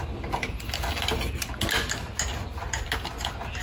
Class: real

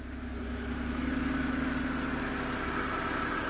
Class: real